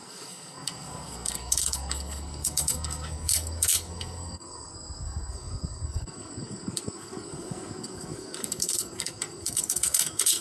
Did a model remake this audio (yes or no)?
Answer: yes